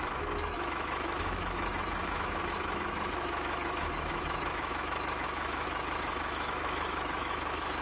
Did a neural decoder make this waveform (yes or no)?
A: yes